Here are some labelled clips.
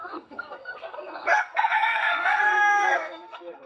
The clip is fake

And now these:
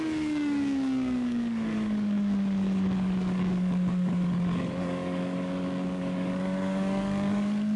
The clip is fake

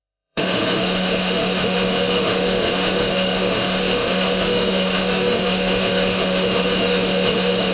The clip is fake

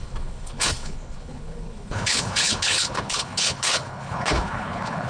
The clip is fake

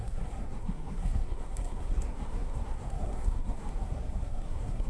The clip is fake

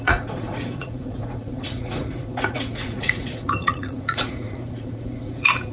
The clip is fake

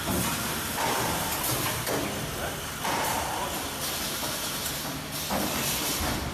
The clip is real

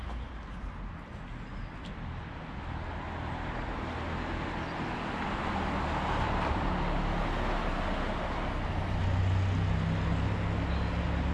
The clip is real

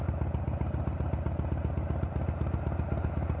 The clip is real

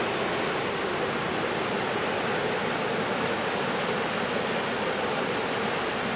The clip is real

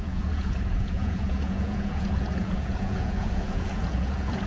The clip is fake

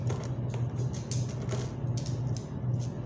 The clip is real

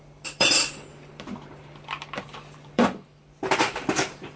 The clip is fake